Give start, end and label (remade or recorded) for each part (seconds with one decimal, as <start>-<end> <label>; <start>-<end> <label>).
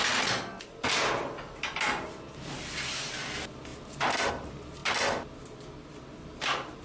0.0-6.8 recorded